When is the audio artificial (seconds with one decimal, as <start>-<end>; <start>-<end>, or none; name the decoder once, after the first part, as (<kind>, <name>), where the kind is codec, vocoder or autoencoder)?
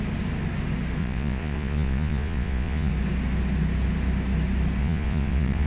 1.0-2.9 (vocoder, Vocos); 4.8-5.7